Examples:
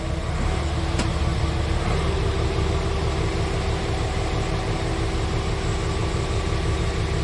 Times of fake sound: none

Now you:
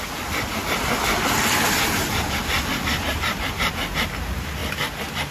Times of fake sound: none

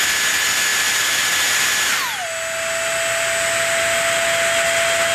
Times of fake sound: none

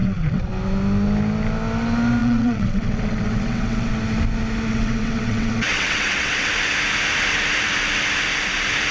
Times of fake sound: 0.0-0.5; 2.2-3.9; 4.7-6.5

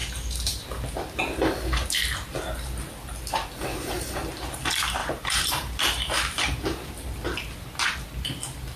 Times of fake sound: 0.0-0.6; 3.7-4.6; 5.0-6.9

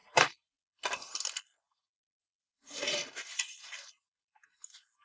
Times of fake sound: none